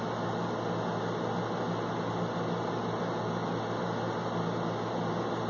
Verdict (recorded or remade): recorded